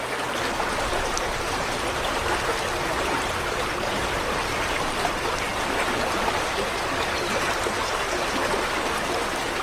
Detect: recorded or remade recorded